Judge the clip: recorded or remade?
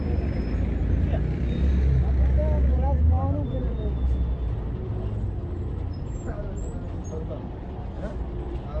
recorded